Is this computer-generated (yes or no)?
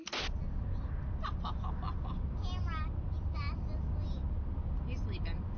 no